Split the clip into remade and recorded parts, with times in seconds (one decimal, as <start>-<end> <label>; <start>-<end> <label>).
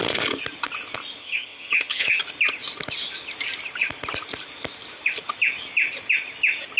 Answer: 0.0-1.2 recorded; 1.2-2.2 remade; 2.2-6.8 recorded